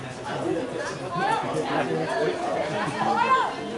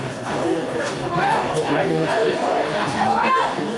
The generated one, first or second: second